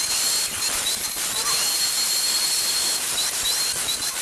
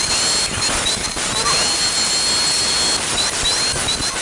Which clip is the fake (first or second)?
first